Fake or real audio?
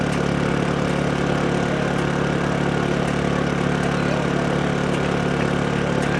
real